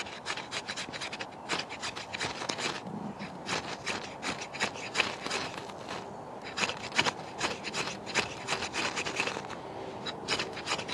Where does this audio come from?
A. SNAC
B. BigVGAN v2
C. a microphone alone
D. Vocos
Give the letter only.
C